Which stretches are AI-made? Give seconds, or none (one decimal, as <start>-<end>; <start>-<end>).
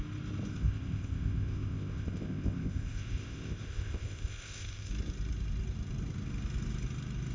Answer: 0.5-4.9